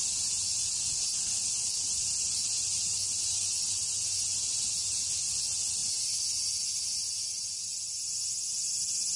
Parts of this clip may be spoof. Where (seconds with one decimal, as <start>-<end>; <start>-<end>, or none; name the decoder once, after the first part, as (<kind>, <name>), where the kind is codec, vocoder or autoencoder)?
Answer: none